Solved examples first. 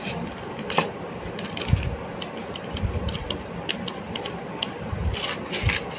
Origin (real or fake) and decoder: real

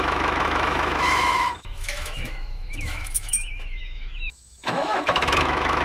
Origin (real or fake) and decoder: fake, autoencoder, DAC-VAE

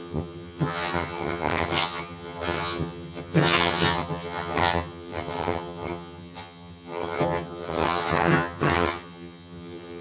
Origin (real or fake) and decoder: fake, vocoder, HiFi-GAN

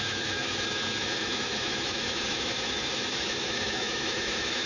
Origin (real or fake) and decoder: fake, autoencoder, DAC-VAE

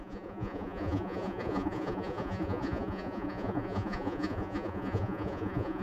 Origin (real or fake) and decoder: fake, vocoder, Vocos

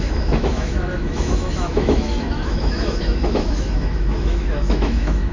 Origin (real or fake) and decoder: fake, autoencoder, DAC-VAE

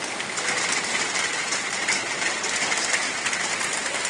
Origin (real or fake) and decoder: real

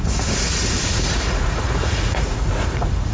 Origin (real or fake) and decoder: fake, vocoder, Vocos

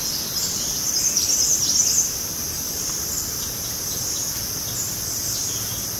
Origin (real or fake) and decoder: real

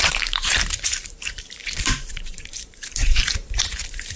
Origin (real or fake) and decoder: fake, vocoder, BigVGAN v2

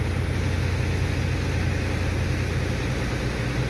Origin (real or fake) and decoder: real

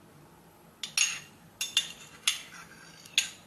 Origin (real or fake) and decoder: real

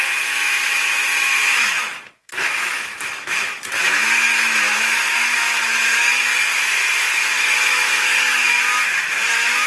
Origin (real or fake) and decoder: fake, autoencoder, DAC-VAE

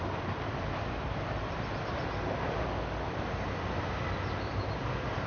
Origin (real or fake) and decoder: real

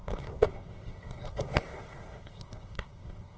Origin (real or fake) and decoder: fake, codec, SNAC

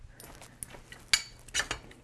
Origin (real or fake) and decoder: real